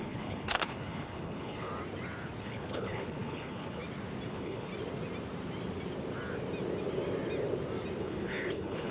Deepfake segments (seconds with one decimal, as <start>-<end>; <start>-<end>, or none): 0.0-1.7; 2.4-3.8; 4.3-4.7; 8.0-8.9